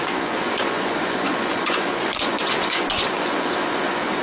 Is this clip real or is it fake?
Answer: fake